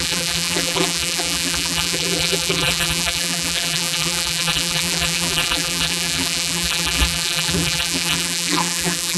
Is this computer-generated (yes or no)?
yes